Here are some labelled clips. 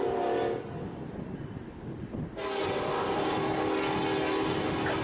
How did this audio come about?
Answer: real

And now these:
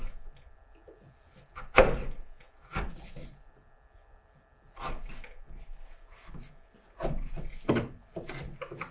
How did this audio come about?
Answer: real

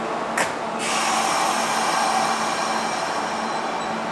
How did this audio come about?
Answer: real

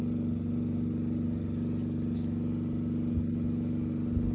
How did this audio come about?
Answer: real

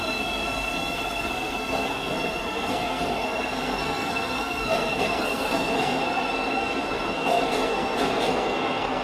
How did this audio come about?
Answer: fake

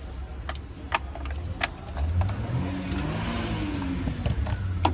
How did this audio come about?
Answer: real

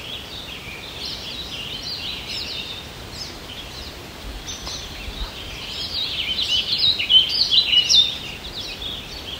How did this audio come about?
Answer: real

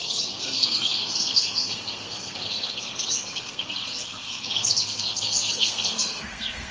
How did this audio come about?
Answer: fake